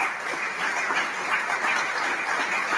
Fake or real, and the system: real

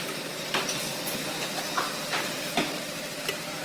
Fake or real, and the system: real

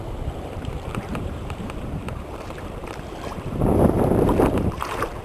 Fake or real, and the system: fake, vocoder, BigVGAN v2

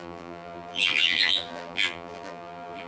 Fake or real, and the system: fake, vocoder, BigVGAN v2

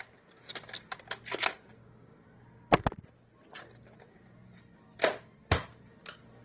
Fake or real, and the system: real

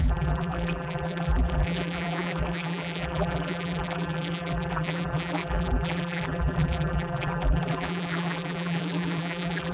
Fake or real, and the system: fake, vocoder, BigVGAN v2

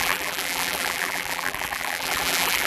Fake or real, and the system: fake, vocoder, BigVGAN v2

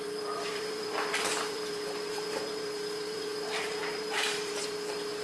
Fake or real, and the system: fake, vocoder, BigVGAN v2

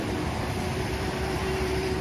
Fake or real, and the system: fake, vocoder, BigVGAN v2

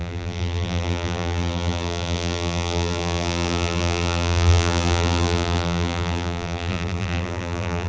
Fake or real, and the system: fake, vocoder, BigVGAN v2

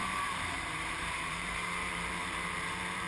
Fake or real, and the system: fake, vocoder, BigVGAN v2